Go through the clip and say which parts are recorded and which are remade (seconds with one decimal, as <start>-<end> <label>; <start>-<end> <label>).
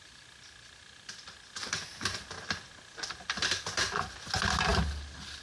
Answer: 0.0-1.6 recorded; 1.6-2.3 remade; 2.3-5.4 recorded